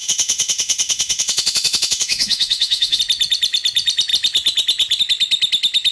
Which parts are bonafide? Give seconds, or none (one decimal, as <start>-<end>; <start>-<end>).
3.0-5.9